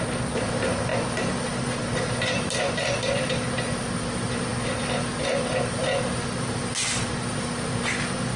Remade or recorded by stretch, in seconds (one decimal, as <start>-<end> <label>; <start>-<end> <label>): 0.0-8.4 recorded